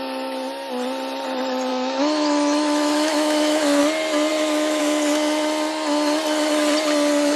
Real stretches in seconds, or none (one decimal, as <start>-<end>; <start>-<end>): 0.0-1.7; 3.8-4.3; 4.8-7.4

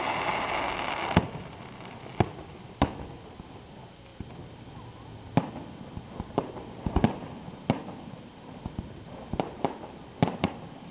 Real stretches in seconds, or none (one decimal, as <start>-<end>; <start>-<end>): 0.0-10.9

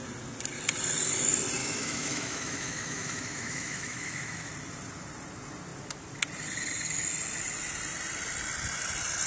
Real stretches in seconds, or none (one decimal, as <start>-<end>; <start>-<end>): 0.0-1.6; 4.5-9.3

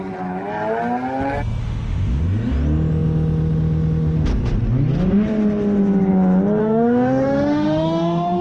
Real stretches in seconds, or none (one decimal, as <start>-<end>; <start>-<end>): 0.0-1.6; 2.2-6.6

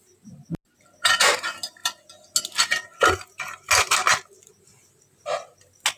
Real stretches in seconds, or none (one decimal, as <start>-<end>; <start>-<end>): 0.0-6.0

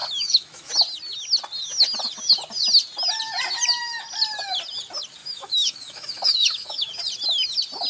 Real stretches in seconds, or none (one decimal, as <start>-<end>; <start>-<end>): 0.7-5.2; 6.9-7.9

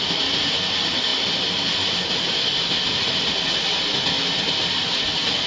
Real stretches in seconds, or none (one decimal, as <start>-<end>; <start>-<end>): 0.0-5.5

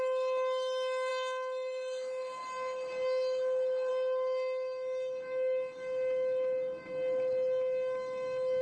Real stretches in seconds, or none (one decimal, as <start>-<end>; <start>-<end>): none